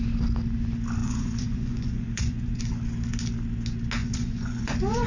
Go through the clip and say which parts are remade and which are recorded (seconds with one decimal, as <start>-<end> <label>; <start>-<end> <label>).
0.0-1.0 recorded; 1.0-2.6 remade; 2.6-4.0 recorded; 4.0-5.1 remade